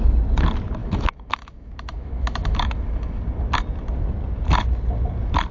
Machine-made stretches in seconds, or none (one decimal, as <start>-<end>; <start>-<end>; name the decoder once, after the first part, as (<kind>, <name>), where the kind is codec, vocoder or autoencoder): 0.8-3.2 (autoencoder, DAC-VAE)